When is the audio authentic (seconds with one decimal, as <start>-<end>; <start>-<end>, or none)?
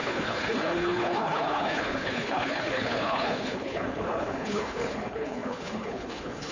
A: none